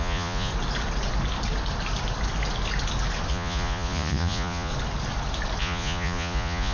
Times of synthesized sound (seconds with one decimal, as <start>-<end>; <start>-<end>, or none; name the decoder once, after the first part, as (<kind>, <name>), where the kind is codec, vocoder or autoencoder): 0.0-0.5 (vocoder, Vocos); 3.3-4.7; 5.6-6.7